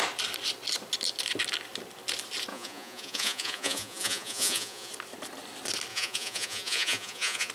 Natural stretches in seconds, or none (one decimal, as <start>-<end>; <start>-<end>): 0.0-2.5; 4.9-5.9

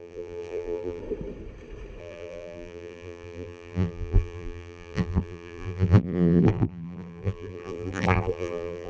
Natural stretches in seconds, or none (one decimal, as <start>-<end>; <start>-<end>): 1.0-2.0

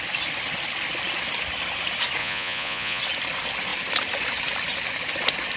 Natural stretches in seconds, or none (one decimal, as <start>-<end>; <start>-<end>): 0.0-2.2; 3.0-5.6

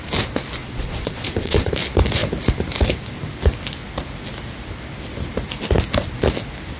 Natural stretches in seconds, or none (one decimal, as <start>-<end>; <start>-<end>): 0.0-0.6; 1.7-6.8

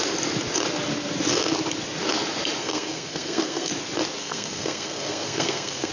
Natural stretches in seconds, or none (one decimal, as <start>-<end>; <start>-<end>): 0.0-2.6; 3.7-4.2